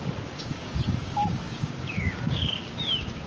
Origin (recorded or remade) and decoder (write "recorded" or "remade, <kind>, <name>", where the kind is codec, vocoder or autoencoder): remade, codec, DAC